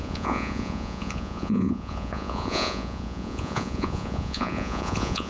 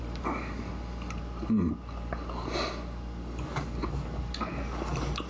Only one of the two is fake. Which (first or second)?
first